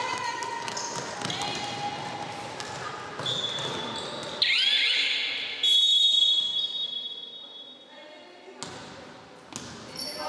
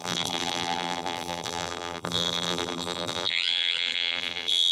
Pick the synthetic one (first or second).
second